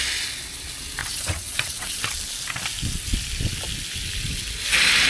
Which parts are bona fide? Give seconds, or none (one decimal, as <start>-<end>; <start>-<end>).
0.0-1.0; 2.1-5.1